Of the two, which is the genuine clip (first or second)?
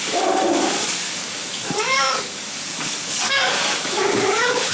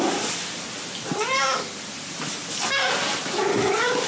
second